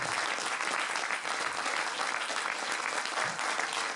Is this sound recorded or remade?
recorded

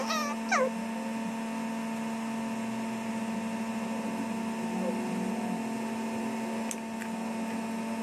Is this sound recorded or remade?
recorded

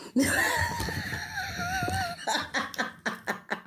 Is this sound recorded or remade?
recorded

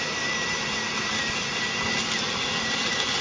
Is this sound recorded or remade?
recorded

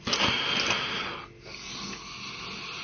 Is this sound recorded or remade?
recorded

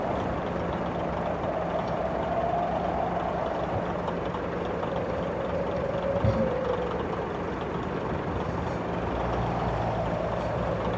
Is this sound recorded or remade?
recorded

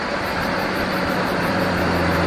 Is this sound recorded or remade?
remade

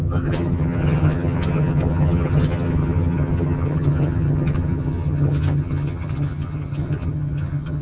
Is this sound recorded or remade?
remade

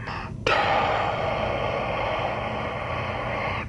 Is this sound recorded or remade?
recorded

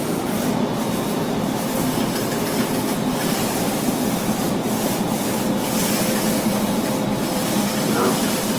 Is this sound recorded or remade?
remade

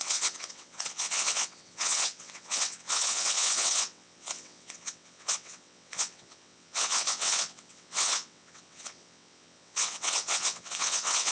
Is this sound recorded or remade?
remade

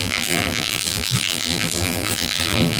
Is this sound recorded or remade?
remade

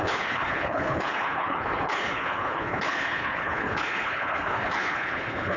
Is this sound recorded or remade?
remade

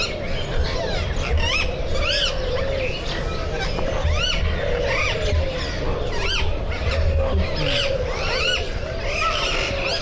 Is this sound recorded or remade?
recorded